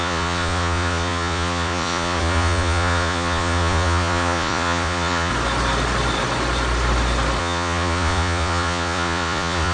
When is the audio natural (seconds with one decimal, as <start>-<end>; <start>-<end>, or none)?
5.3-7.4